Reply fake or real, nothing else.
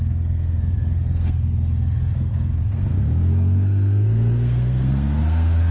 fake